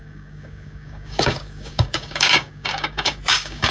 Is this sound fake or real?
fake